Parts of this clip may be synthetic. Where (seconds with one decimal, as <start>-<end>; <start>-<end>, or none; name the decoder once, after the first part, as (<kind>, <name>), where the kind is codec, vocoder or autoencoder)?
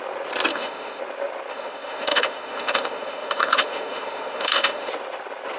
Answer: 0.5-1.0 (autoencoder, DAC-VAE); 1.5-4.9